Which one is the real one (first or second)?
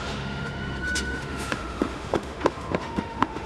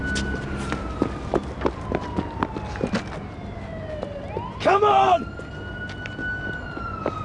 second